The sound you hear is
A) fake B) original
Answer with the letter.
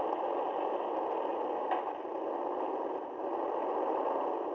B